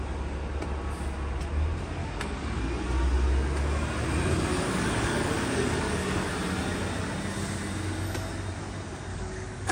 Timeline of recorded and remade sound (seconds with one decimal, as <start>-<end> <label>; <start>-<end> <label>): 0.0-2.0 recorded; 2.0-2.6 remade; 2.6-4.5 recorded; 4.5-6.3 remade; 6.3-9.1 recorded; 9.1-9.7 remade